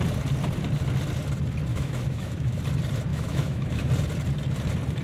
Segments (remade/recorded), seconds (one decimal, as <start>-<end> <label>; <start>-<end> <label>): 0.0-1.7 recorded; 1.7-2.6 remade; 2.6-3.1 recorded; 3.1-3.9 remade; 3.9-5.0 recorded